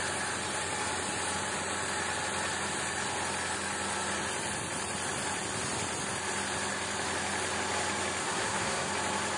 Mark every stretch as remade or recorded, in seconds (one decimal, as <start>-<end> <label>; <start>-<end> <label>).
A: 0.0-8.2 recorded; 8.2-8.9 remade; 8.9-9.4 recorded